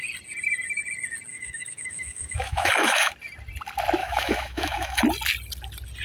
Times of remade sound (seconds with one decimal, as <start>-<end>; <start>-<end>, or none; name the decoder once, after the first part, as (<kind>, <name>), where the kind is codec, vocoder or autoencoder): 1.3-3.1 (autoencoder, DAC-VAE); 4.0-5.0